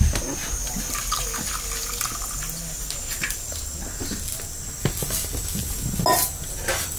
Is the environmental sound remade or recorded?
recorded